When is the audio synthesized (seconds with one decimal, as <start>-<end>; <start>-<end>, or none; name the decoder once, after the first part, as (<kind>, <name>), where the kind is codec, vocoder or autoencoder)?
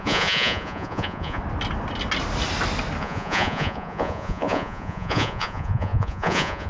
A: 0.0-1.4 (vocoder, Vocos); 3.0-6.7